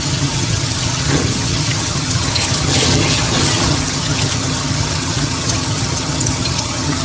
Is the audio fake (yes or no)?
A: yes